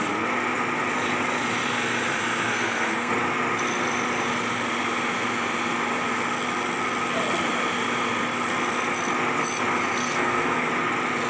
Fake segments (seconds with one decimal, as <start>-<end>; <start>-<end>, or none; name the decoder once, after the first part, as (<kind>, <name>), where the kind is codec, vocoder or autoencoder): 2.5-3.1 (codec, SNAC); 10.0-10.7